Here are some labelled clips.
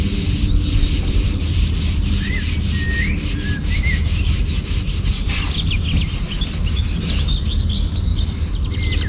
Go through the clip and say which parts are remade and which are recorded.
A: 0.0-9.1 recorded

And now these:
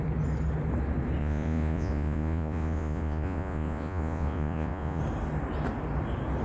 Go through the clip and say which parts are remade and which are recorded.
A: 0.0-1.2 recorded; 1.2-5.0 remade; 5.0-6.4 recorded

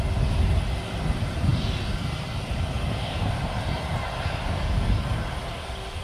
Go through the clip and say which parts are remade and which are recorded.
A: 0.0-6.0 recorded